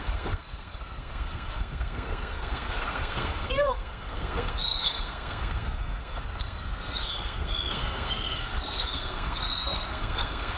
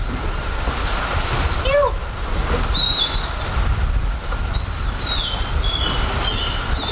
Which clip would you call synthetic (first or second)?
first